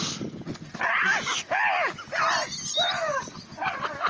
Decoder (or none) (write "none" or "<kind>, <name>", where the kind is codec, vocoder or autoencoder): none